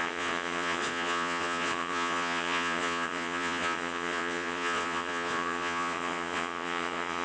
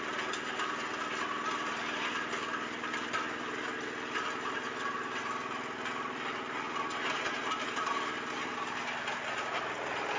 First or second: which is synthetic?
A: first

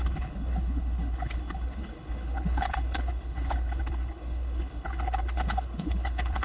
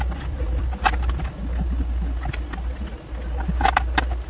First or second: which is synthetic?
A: first